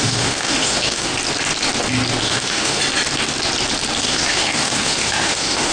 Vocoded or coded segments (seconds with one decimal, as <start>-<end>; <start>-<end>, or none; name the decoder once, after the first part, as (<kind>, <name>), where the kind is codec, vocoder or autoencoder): 0.0-1.1 (autoencoder, DAC-VAE); 2.2-2.8; 4.0-5.7